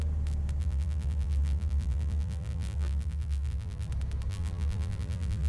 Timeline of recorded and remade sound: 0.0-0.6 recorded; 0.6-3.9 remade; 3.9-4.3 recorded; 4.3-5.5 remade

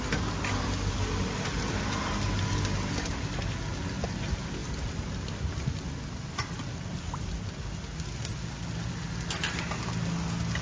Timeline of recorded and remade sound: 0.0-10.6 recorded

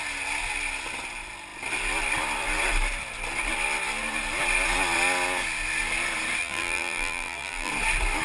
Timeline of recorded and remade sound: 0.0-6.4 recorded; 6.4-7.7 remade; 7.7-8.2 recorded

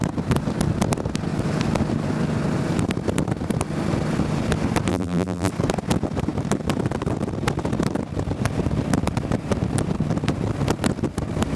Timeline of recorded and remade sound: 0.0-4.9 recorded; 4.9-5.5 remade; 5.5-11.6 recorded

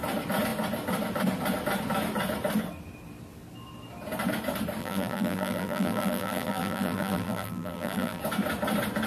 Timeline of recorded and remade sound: 0.0-4.8 recorded; 4.8-8.2 remade; 8.2-9.1 recorded

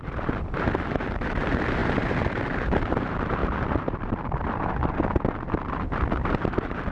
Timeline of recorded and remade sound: 0.0-6.9 remade